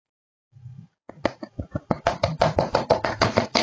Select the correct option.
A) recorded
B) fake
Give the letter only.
B